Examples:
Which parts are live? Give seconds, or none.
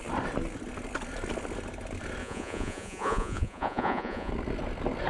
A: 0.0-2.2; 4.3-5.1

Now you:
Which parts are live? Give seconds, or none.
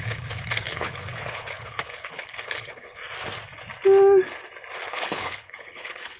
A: 3.0-4.9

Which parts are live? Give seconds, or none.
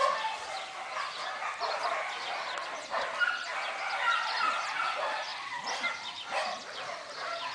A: 0.0-5.3; 7.1-7.5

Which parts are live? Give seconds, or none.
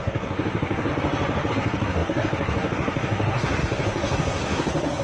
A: 0.9-1.5